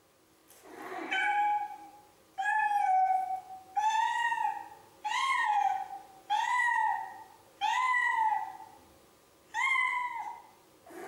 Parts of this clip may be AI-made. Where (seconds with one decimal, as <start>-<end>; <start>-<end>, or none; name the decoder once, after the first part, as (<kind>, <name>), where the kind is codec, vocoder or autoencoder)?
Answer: 0.4-2.3 (vocoder, BigVGAN v2)